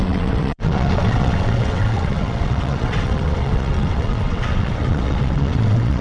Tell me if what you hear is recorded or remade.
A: remade